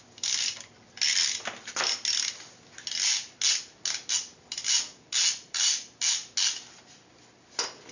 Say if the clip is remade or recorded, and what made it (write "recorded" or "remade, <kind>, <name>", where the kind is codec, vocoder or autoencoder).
recorded